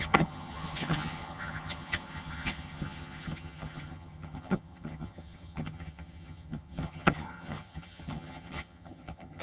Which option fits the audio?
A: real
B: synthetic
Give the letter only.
B